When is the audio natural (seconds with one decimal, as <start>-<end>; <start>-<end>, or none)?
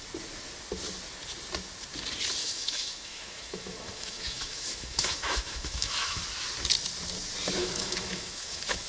0.0-2.4; 6.2-7.6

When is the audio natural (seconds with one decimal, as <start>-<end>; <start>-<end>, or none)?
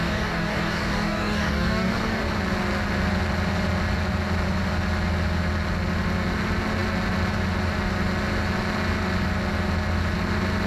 2.3-10.7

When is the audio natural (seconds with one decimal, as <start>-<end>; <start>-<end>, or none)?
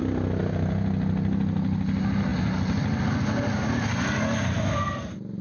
0.0-5.4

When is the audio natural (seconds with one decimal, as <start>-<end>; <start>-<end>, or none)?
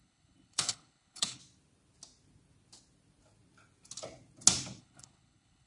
1.4-4.8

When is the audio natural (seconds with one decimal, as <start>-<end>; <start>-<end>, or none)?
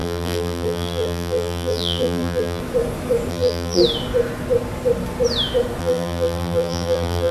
2.6-3.3; 3.8-5.8